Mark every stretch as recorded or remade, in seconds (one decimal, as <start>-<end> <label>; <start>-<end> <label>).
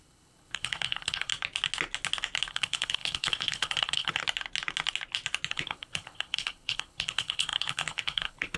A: 0.0-1.3 remade; 1.3-2.5 recorded; 2.5-4.2 remade; 4.2-5.5 recorded; 5.5-8.6 remade